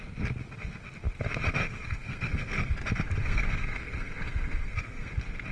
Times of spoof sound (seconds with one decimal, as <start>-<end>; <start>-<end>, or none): 1.6-2.7; 3.2-5.1